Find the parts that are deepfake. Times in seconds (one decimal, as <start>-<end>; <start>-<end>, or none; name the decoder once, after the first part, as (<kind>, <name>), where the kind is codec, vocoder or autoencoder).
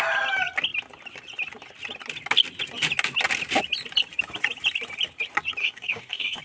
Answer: 5.6-6.4 (codec, DAC)